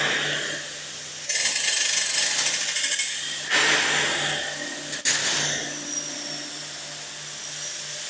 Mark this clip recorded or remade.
recorded